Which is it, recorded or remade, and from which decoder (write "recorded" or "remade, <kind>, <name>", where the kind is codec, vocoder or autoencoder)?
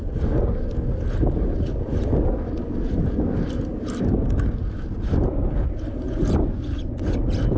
recorded